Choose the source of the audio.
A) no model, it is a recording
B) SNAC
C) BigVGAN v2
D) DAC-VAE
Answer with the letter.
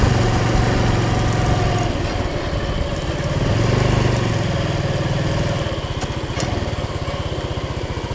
A